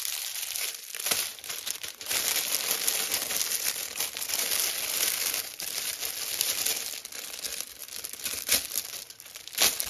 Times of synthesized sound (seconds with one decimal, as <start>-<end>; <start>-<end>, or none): 1.3-2.1